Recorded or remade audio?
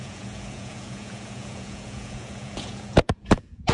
remade